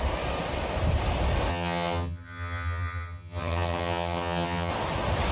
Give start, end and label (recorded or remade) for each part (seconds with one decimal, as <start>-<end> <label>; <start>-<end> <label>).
0.0-1.5 recorded; 1.5-4.7 remade; 4.7-5.3 recorded